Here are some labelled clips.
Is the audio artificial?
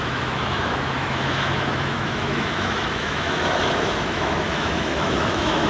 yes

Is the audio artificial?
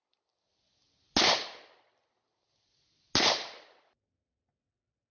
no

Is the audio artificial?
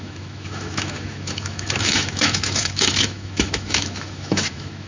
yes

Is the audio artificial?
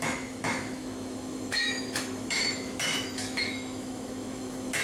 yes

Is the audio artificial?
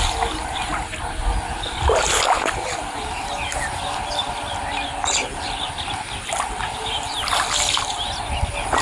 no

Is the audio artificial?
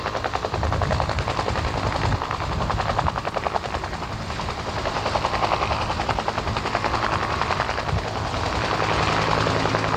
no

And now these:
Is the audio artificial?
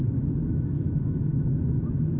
yes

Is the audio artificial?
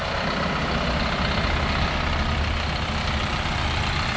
no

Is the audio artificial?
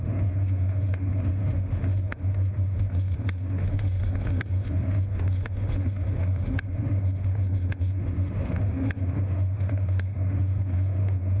yes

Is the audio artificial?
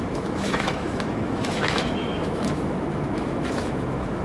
yes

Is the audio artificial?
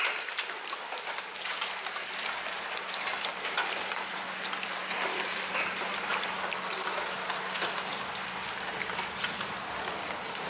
no